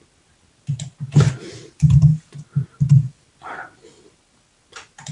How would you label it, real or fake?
real